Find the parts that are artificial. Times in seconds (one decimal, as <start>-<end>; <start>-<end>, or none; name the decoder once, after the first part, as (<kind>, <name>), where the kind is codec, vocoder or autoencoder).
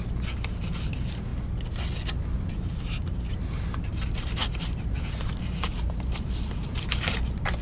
0.0-1.3 (vocoder, BigVGAN v2); 2.3-7.6